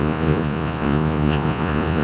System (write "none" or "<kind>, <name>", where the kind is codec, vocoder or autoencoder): vocoder, Vocos